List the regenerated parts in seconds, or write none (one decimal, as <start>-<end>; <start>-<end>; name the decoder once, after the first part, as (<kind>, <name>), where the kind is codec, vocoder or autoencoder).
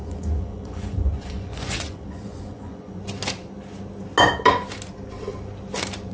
0.0-3.0 (vocoder, Vocos)